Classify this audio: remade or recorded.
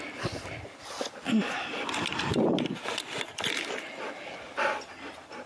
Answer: recorded